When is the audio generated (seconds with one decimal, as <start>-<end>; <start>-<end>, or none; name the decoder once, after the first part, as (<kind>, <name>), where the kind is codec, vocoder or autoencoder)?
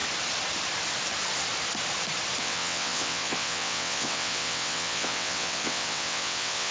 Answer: 2.4-6.7 (vocoder, WaveNeXt)